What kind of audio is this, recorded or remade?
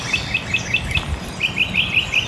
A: recorded